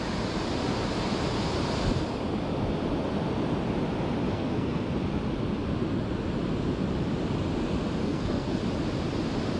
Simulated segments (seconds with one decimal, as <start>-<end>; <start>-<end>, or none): 4.3-4.9; 8.0-8.6